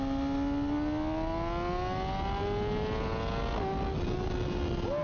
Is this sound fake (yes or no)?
no